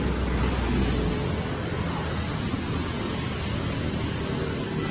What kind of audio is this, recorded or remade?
recorded